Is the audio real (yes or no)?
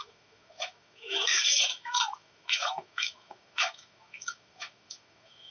no